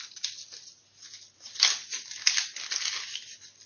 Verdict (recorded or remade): recorded